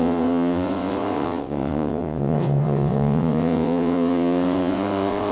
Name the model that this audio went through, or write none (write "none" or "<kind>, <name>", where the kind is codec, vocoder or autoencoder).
vocoder, WaveNeXt